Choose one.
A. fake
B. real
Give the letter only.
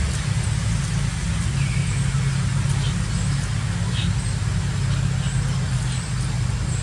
B